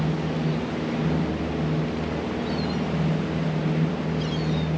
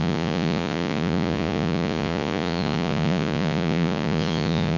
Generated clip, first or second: second